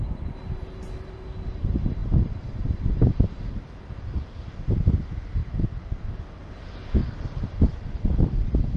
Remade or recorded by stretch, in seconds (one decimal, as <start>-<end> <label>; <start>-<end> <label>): 0.0-2.0 recorded; 2.0-3.1 remade; 3.1-7.0 recorded; 7.0-8.8 remade